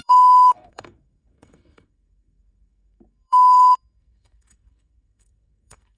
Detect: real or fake fake